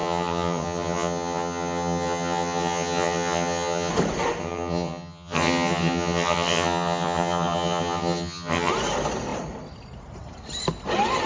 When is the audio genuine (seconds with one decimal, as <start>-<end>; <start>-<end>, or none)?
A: 3.9-4.4; 8.7-11.3